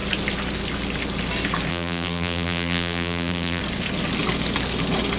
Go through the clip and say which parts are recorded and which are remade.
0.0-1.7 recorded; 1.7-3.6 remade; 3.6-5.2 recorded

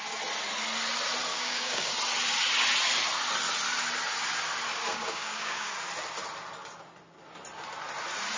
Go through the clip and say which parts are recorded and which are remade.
0.0-1.3 recorded; 1.3-1.9 remade; 1.9-4.9 recorded; 4.9-5.7 remade; 5.7-8.4 recorded

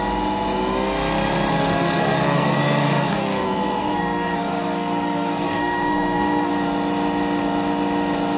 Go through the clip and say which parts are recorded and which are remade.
0.0-1.5 recorded; 1.5-6.5 remade; 6.5-8.4 recorded

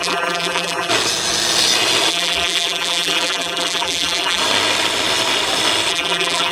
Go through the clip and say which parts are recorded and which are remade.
0.0-0.9 remade; 0.9-2.1 recorded; 2.1-4.4 remade; 4.4-5.9 recorded; 5.9-6.5 remade

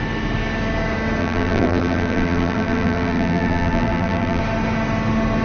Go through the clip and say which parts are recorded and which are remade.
0.0-1.2 recorded; 1.2-4.4 remade; 4.4-5.4 recorded

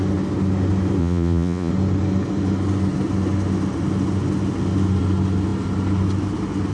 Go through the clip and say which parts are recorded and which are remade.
0.0-1.0 recorded; 1.0-1.7 remade; 1.7-6.7 recorded